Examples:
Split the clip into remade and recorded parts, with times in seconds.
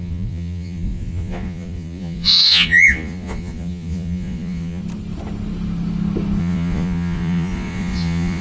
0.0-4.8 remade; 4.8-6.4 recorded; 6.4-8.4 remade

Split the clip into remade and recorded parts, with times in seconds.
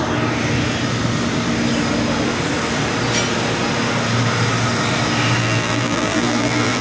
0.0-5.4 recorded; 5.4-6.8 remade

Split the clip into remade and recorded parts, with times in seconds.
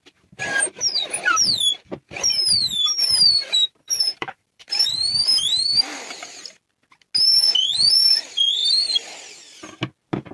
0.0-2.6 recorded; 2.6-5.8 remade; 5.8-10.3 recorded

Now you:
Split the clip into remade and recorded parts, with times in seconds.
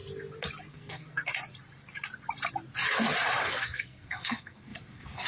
0.0-0.7 recorded; 0.7-1.3 remade; 1.3-3.4 recorded; 3.4-5.3 remade